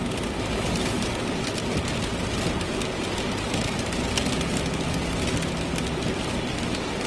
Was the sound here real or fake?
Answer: real